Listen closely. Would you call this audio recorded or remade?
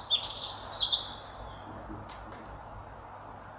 recorded